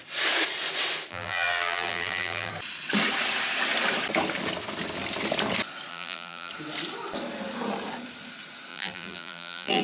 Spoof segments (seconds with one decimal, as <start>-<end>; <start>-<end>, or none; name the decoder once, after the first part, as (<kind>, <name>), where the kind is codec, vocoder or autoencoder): 1.1-2.5 (vocoder, BigVGAN v2); 5.9-6.5; 8.7-9.8